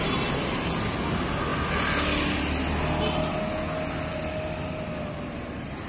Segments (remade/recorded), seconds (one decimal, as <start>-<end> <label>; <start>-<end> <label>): 0.0-5.9 recorded